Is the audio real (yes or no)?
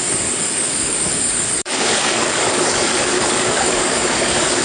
no